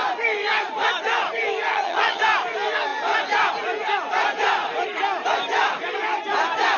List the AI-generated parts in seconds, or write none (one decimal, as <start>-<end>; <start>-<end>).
1.7-2.2